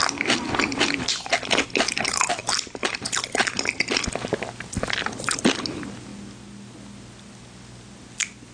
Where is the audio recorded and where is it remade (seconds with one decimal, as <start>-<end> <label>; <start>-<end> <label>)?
0.0-8.5 recorded